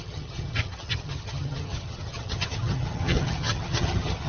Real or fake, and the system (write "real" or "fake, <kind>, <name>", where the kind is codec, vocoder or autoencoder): fake, vocoder, HiFi-GAN